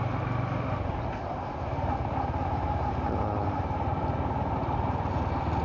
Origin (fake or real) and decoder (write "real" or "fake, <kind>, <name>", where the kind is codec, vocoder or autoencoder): real